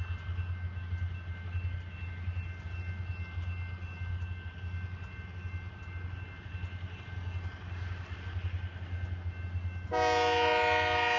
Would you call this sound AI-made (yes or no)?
no